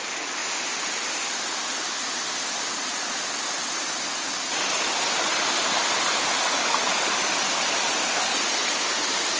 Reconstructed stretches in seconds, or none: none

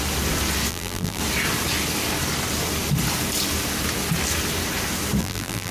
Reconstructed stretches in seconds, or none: 0.7-1.2 (vocoder, BigVGAN v2); 5.2-5.7

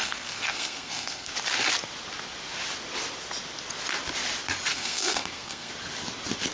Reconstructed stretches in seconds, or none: 0.0-1.3 (codec, SNAC); 4.7-5.7

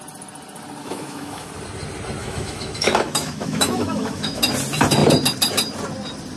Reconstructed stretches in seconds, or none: 0.8-1.5 (autoencoder, DAC-VAE); 2.2-4.4

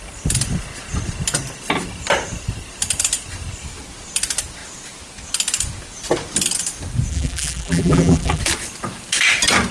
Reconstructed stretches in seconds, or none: 7.1-8.4 (vocoder, BigVGAN v2)